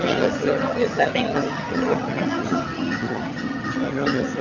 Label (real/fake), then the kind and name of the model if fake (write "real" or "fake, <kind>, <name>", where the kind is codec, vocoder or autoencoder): fake, vocoder, HiFi-GAN